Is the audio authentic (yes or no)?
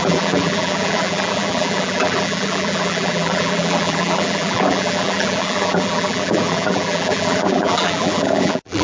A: no